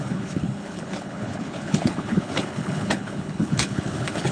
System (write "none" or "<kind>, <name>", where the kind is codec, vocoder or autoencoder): codec, HILCodec